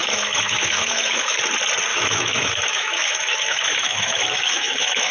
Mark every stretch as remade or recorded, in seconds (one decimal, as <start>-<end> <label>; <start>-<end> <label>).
0.0-1.4 remade; 1.4-1.9 recorded; 1.9-5.1 remade